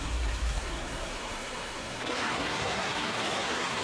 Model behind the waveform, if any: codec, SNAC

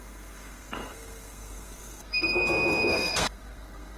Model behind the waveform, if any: codec, SNAC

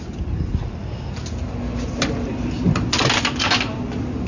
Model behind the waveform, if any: none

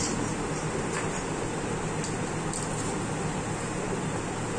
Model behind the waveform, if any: none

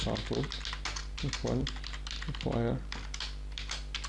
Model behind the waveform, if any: none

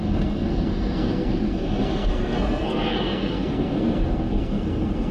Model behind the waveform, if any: codec, SNAC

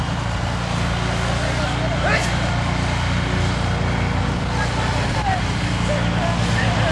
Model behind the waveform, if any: none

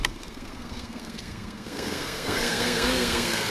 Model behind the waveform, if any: codec, SNAC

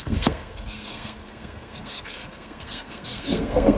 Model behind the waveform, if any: codec, SNAC